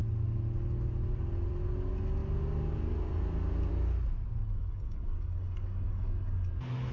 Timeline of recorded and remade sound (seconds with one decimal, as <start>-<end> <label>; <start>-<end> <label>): 0.0-4.4 recorded; 4.4-6.5 remade; 6.5-6.9 recorded